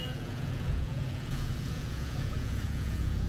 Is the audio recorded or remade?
remade